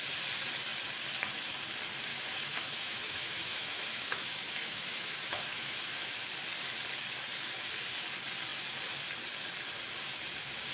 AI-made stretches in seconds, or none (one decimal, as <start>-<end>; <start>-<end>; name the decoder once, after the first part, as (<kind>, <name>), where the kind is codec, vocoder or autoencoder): 2.1-6.1 (autoencoder, DAC-VAE)

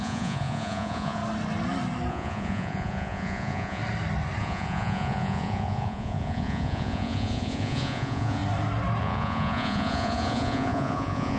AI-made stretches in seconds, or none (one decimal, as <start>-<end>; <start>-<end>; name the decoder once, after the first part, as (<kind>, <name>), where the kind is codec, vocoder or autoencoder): 0.0-1.2 (vocoder, Vocos); 2.1-3.8; 4.4-8.4; 9.0-11.4

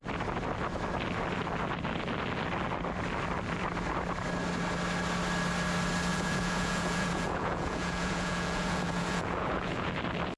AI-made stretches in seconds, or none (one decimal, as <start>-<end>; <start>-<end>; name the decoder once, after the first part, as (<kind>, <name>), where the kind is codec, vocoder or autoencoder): 6.1-10.0 (vocoder, Vocos)

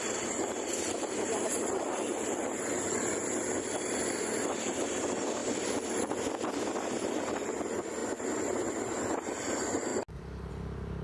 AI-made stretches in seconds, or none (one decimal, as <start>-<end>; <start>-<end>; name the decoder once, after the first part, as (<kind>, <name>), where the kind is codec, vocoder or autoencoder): none

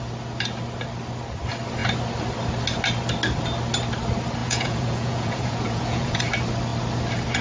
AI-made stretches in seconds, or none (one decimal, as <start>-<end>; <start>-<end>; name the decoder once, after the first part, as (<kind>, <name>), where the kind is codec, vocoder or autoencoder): 4.4-6.2 (vocoder, Vocos)

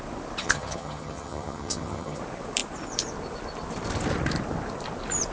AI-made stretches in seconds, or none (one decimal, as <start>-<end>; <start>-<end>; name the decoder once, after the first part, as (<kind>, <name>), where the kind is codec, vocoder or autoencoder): 0.4-2.2 (vocoder, HiFi-GAN)

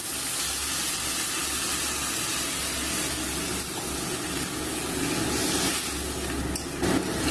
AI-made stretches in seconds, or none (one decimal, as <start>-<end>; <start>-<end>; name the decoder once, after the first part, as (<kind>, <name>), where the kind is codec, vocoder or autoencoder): none